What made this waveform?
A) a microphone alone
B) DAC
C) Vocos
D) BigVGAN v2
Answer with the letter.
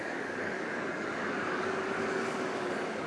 B